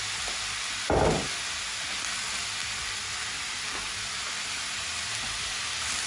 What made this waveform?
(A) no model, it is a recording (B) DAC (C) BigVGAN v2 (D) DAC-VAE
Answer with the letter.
A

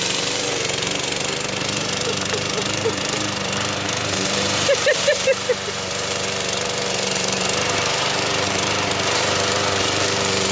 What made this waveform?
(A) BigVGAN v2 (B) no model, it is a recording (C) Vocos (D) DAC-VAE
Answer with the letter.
A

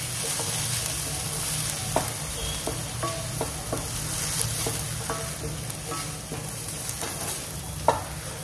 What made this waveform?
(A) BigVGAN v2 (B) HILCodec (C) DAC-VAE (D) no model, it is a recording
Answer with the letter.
D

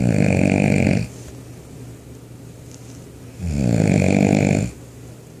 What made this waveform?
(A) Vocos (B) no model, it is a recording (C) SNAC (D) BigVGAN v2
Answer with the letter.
B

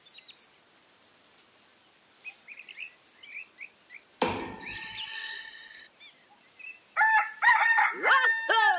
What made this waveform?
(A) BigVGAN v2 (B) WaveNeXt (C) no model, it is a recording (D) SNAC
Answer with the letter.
C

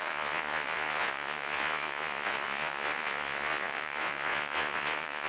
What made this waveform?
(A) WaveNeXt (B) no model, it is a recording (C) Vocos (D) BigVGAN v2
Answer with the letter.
C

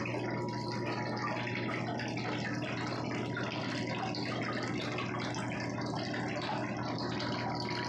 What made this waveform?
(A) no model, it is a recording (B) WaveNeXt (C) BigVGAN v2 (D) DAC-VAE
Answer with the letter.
A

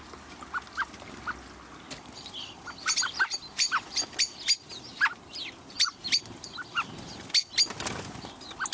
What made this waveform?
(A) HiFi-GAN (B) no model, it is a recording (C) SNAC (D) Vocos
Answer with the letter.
B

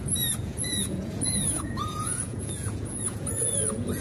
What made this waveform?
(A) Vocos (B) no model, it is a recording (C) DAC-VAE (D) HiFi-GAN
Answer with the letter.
A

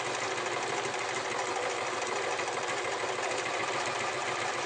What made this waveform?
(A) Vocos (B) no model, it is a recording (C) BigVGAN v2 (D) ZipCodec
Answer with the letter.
B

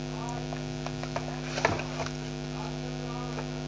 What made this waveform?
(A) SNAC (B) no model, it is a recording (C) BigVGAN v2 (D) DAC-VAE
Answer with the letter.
B